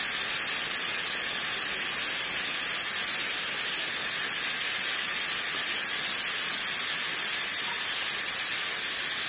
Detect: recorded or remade recorded